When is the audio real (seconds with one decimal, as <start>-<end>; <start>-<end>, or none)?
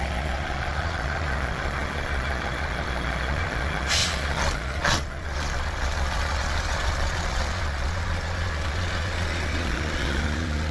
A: none